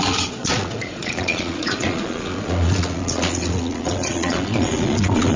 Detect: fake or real fake